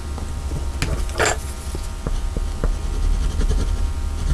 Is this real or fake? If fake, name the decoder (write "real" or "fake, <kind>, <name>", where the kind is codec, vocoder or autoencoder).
real